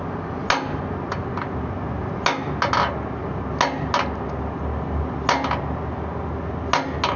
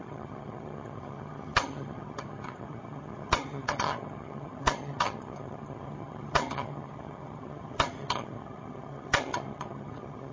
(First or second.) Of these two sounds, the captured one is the first